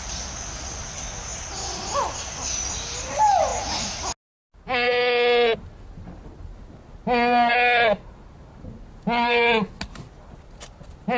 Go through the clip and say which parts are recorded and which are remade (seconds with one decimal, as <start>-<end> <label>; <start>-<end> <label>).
0.0-11.2 recorded